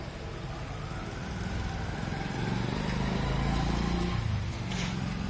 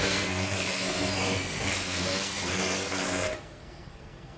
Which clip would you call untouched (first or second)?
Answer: first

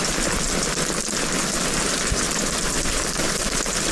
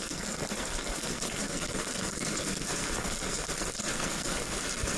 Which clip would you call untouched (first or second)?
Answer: first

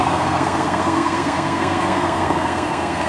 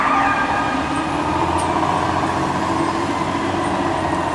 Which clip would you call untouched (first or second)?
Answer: second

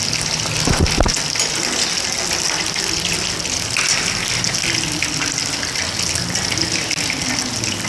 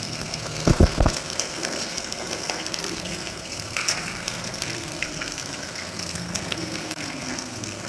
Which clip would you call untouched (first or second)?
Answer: first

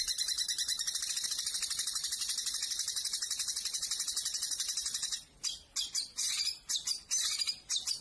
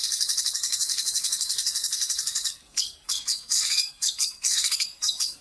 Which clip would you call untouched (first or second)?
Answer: first